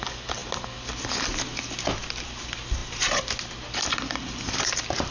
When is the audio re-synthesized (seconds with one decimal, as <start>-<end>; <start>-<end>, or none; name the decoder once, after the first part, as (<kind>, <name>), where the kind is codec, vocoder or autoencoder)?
none